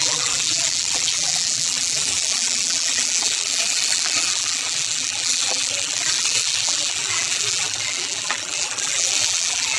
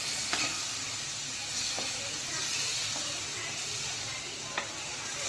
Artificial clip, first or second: first